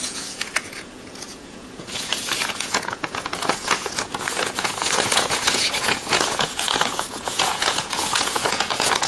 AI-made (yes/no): yes